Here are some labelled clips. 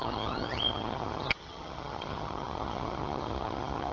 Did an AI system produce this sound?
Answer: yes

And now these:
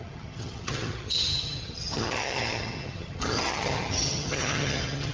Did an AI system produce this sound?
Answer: yes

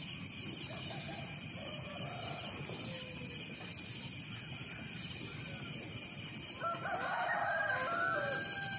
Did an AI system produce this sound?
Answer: no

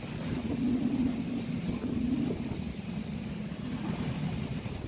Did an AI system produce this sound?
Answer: no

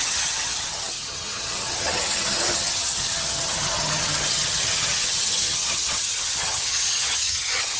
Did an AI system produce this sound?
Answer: yes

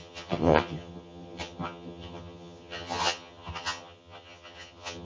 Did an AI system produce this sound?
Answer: yes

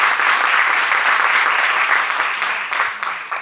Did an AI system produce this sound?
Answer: no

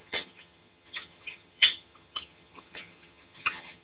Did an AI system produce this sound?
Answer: yes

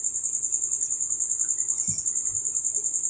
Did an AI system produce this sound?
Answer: no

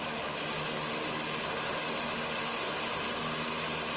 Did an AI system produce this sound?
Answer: no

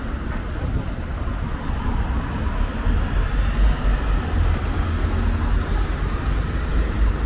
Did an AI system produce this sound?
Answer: no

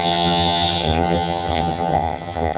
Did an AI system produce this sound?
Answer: yes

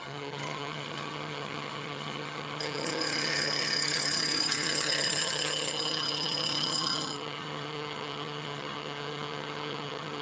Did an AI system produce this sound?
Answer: yes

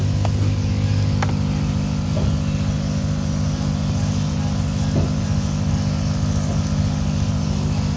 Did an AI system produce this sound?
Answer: no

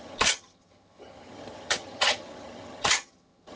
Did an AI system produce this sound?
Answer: yes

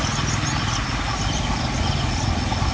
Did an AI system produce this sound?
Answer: no